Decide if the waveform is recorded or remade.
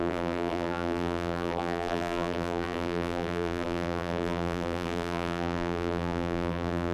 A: remade